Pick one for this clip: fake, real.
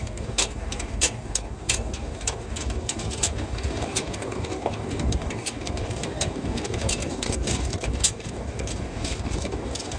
fake